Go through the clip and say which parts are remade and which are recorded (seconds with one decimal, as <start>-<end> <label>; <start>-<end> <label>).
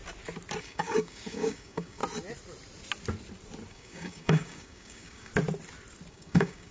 0.0-0.6 recorded; 0.6-2.0 remade; 2.0-3.7 recorded; 3.7-5.3 remade; 5.3-6.1 recorded; 6.1-6.7 remade